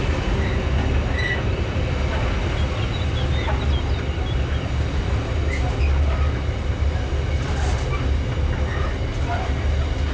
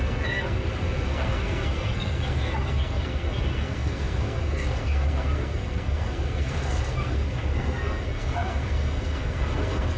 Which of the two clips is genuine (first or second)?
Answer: first